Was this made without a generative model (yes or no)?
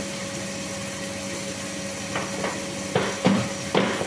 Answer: yes